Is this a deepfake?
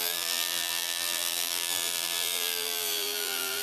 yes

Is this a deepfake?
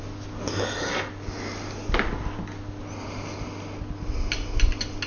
no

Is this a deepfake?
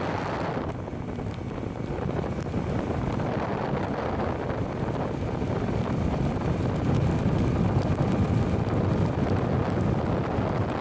no